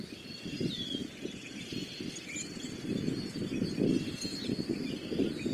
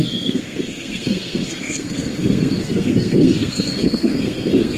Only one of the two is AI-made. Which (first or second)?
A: second